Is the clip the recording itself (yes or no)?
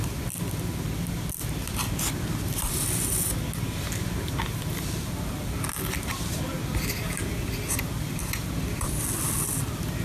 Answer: yes